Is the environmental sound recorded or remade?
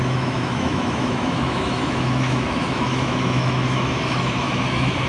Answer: remade